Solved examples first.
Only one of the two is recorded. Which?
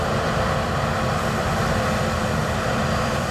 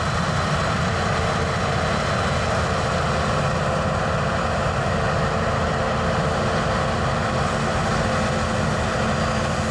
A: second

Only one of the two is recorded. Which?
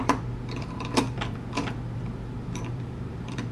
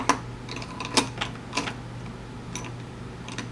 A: second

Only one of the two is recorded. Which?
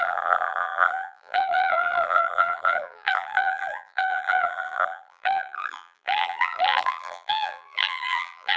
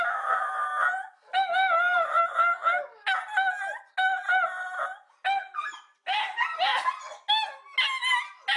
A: second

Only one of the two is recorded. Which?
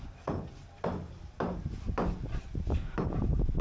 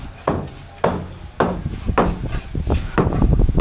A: second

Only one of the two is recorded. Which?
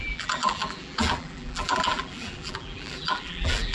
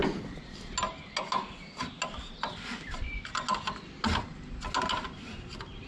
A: second